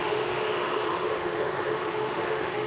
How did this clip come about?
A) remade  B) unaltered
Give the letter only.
A